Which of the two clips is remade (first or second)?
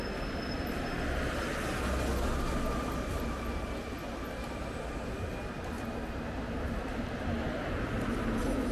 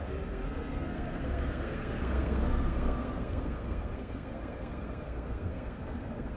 second